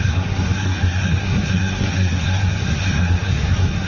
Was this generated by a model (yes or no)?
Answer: yes